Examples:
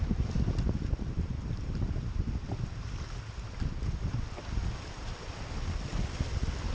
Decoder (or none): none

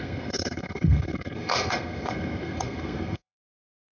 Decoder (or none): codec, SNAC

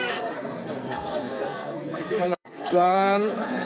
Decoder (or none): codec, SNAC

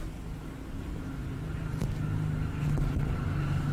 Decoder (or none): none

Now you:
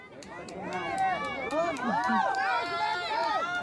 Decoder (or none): none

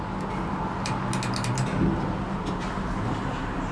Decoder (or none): none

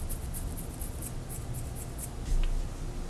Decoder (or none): none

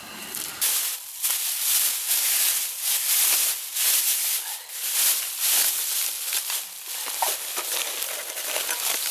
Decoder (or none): none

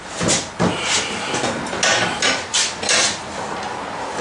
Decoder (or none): none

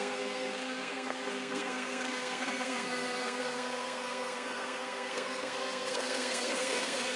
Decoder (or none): codec, SNAC